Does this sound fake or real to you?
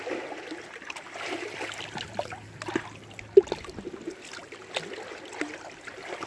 real